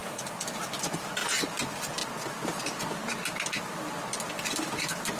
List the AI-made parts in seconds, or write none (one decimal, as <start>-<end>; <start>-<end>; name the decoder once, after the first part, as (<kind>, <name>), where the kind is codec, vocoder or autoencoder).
none